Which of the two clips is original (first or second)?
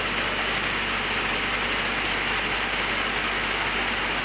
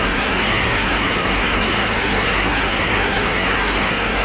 first